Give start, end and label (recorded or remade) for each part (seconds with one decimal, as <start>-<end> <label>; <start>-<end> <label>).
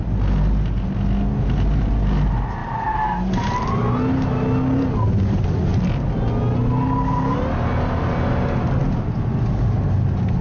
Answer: 0.0-10.4 recorded